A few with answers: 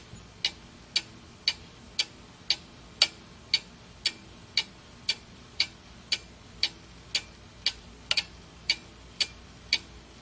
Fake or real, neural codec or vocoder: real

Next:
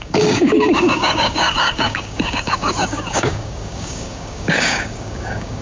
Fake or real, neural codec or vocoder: fake, codec, DAC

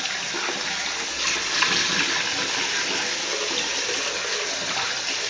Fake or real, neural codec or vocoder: real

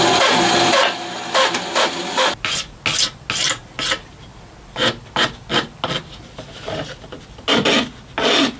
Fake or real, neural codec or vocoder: real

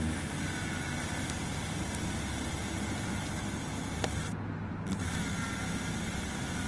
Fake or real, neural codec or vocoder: real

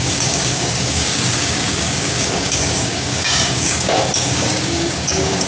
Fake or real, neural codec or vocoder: fake, codec, DAC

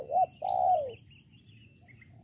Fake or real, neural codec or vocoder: real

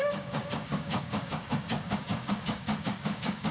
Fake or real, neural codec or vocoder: fake, codec, DAC